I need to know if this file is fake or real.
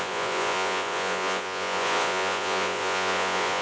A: fake